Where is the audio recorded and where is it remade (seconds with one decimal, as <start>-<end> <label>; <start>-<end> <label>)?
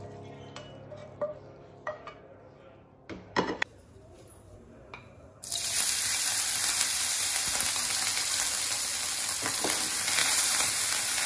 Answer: 0.0-1.0 recorded; 1.0-4.8 remade; 4.8-10.2 recorded; 10.2-10.8 remade; 10.8-11.3 recorded